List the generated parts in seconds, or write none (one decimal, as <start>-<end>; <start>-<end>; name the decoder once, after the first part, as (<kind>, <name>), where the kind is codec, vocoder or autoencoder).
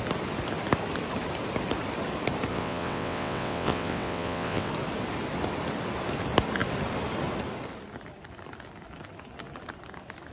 2.5-4.7 (vocoder, WaveNeXt)